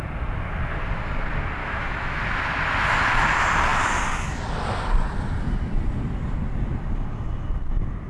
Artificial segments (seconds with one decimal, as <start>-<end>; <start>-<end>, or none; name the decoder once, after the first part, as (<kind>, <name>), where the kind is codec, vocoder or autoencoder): 1.6-2.2 (autoencoder, DAC-VAE)